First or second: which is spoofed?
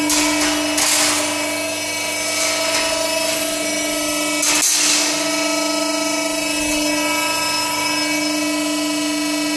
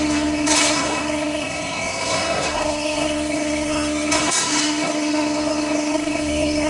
second